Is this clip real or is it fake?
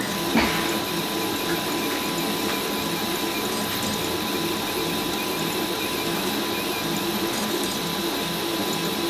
real